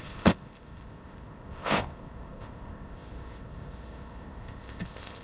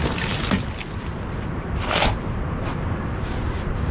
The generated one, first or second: first